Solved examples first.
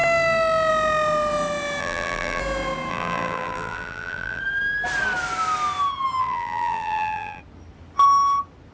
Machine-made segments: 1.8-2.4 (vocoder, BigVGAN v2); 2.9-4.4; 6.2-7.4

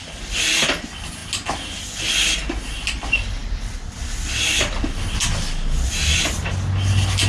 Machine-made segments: none

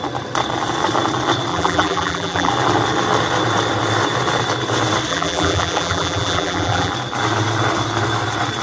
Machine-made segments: 1.5-2.5 (vocoder, BigVGAN v2); 5.1-6.9

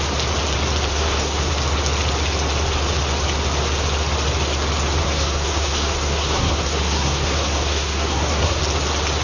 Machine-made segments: 0.9-1.5 (codec, SNAC); 5.0-8.6